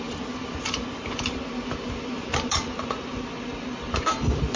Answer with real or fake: real